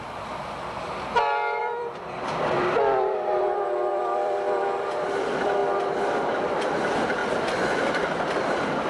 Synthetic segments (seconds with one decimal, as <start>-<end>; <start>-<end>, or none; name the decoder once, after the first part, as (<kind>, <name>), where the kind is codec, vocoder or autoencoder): 0.0-1.1 (vocoder, BigVGAN v2); 1.6-5.6; 6.3-7.2; 8.5-8.9